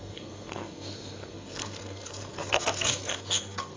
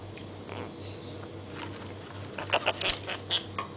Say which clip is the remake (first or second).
first